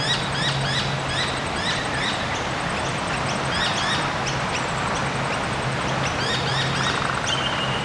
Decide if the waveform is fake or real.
real